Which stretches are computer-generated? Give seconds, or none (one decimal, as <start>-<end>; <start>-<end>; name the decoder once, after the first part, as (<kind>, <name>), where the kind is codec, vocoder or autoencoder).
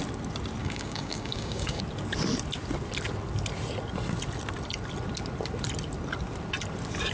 0.6-1.8 (codec, DAC)